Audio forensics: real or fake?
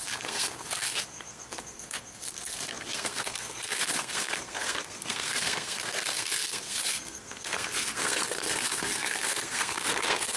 fake